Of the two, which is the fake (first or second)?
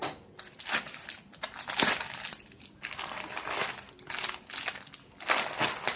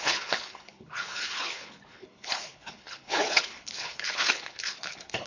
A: second